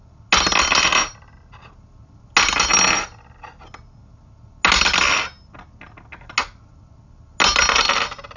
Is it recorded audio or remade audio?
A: recorded